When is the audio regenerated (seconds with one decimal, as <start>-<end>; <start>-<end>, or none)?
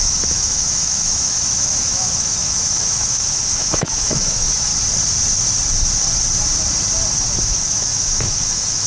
0.0-4.7; 7.3-8.9